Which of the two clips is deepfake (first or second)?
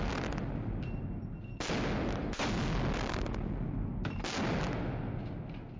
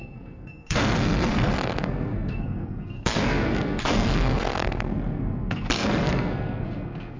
second